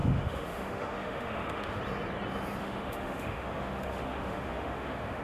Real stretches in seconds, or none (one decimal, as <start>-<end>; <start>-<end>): 1.8-2.6